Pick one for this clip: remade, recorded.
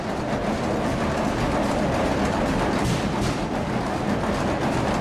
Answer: recorded